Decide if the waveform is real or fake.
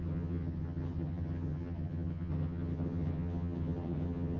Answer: fake